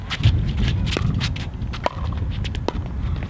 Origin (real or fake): real